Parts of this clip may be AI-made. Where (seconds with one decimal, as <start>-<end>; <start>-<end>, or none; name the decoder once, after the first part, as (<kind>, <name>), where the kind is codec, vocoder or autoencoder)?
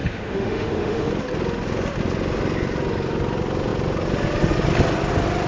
0.0-1.1 (autoencoder, DAC-VAE)